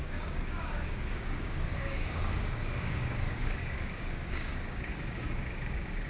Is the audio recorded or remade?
remade